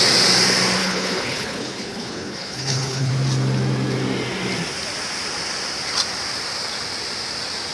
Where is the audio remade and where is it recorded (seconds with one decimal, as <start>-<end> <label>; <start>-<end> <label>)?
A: 0.0-0.8 recorded; 0.8-3.1 remade; 3.1-7.7 recorded